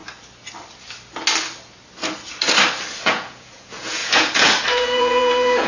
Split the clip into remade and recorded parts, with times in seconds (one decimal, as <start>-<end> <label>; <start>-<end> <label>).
0.0-3.0 recorded; 3.0-5.7 remade